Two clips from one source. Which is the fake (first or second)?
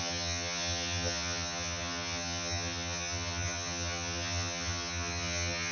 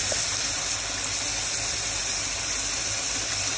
first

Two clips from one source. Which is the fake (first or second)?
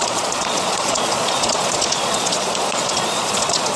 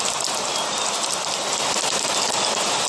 first